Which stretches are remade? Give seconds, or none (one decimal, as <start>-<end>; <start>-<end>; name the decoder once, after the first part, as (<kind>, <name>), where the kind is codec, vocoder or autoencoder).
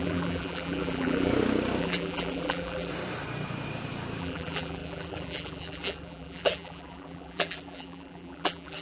0.0-1.3 (vocoder, BigVGAN v2); 1.8-2.9; 4.2-8.8